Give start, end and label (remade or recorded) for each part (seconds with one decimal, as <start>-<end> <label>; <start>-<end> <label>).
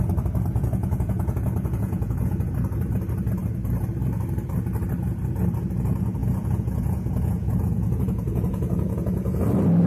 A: 0.0-0.5 recorded; 0.5-2.5 remade; 2.5-6.2 recorded; 6.2-9.4 remade; 9.4-9.9 recorded